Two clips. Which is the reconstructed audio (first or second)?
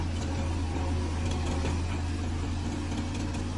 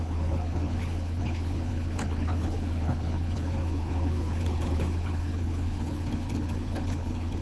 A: second